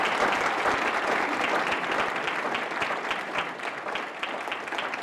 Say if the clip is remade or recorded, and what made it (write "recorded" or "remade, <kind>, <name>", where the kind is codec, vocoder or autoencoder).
recorded